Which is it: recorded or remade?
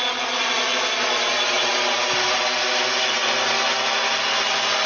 recorded